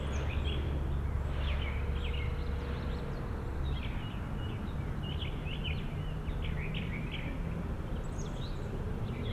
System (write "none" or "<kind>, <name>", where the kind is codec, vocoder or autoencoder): none